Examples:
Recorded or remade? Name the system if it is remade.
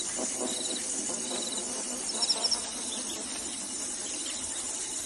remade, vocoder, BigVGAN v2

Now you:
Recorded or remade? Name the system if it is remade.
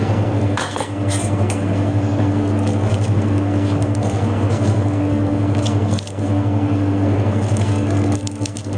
remade, codec, SNAC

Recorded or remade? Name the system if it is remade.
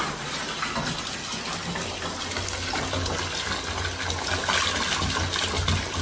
recorded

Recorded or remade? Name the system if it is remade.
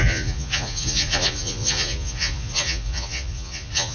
remade, vocoder, Vocos